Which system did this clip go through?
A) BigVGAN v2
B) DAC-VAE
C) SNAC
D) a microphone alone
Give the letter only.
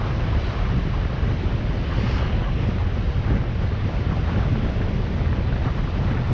D